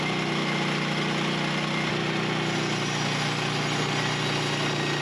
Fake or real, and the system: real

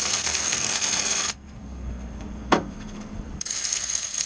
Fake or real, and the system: fake, codec, SNAC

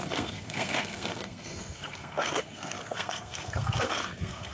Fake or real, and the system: fake, codec, SNAC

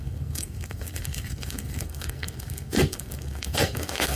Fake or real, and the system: fake, codec, SNAC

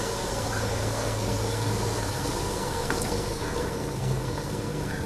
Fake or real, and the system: fake, codec, SNAC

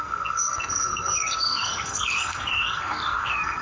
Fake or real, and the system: fake, codec, SNAC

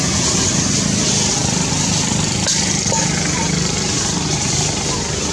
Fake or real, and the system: real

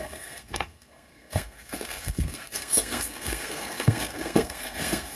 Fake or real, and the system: fake, codec, SNAC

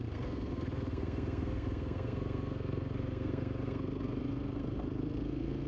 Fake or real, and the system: fake, codec, SNAC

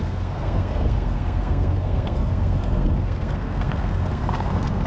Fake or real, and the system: fake, codec, SNAC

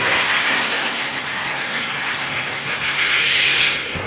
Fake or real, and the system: fake, codec, SNAC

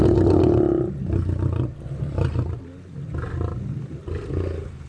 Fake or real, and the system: real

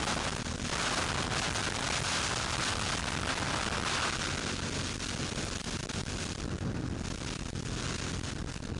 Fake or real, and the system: real